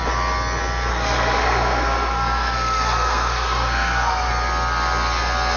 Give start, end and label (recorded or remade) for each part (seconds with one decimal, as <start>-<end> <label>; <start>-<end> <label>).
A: 0.0-0.9 recorded; 0.9-4.3 remade; 4.3-5.6 recorded